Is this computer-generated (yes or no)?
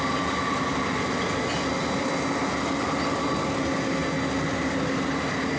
no